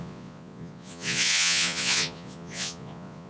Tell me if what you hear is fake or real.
fake